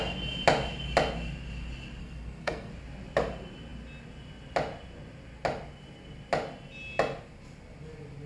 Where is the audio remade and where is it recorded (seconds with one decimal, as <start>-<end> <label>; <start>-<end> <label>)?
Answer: 0.0-2.0 recorded; 2.0-2.7 remade; 2.7-8.3 recorded